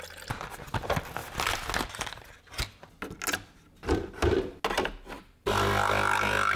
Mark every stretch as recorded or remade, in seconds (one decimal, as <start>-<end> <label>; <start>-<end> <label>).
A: 0.0-6.6 recorded